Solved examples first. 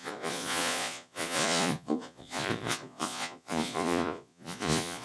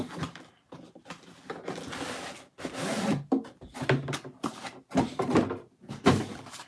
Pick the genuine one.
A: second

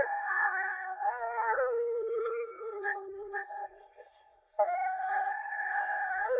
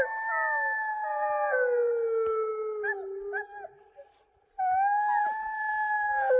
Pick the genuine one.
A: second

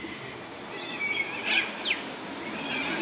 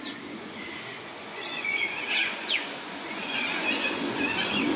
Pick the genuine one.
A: first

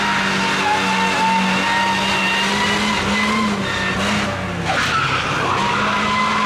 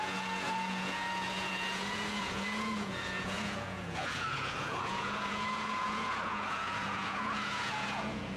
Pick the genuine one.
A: first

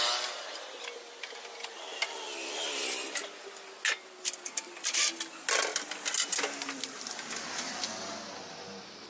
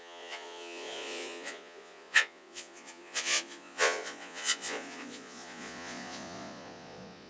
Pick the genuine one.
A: first